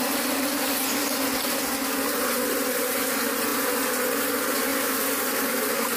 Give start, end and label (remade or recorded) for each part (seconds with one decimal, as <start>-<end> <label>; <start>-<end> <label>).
0.0-6.0 recorded